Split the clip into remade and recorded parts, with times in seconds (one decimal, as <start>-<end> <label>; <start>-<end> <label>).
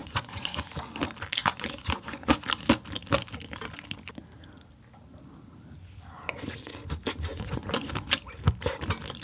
0.0-0.7 remade; 0.7-1.4 recorded; 1.4-2.4 remade; 2.4-7.3 recorded; 7.3-7.9 remade; 7.9-9.2 recorded